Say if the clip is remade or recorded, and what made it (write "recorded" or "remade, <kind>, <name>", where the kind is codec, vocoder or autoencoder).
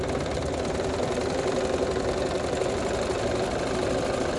recorded